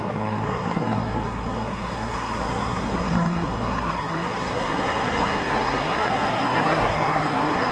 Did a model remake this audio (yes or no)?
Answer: yes